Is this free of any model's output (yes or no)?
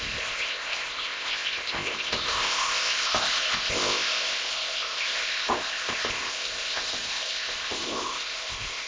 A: no